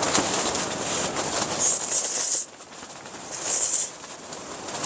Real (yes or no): yes